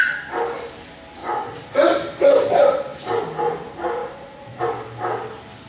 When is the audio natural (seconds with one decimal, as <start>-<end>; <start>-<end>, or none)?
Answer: 0.0-4.0; 4.6-5.7